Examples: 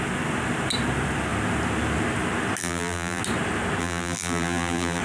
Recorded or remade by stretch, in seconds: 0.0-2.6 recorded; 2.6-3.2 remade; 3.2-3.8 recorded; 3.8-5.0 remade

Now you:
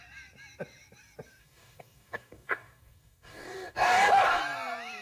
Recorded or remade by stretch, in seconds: 0.0-1.4 recorded; 1.4-4.4 remade; 4.4-5.0 recorded

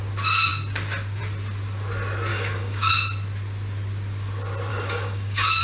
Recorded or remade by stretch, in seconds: 0.0-2.3 recorded; 2.3-2.9 remade; 2.9-4.7 recorded; 4.7-5.6 remade